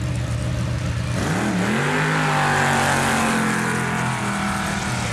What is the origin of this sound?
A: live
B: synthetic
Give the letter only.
A